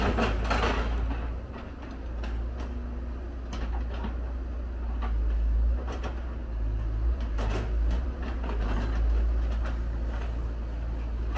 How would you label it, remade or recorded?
recorded